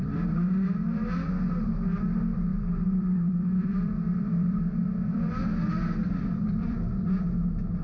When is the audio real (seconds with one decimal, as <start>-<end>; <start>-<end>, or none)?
0.0-2.5; 5.4-6.0; 7.3-7.8